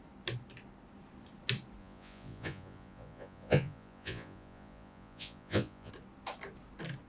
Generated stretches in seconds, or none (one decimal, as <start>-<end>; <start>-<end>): 1.8-5.9